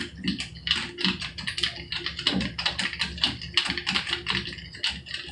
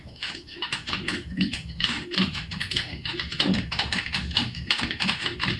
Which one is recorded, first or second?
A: first